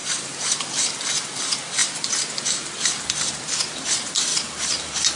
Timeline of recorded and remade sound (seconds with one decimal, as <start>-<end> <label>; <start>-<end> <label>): 0.0-1.0 remade; 1.0-4.3 recorded; 4.3-5.2 remade